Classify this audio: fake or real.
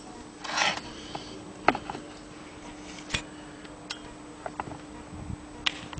real